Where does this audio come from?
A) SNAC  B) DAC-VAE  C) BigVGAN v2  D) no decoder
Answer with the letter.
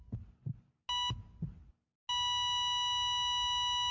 D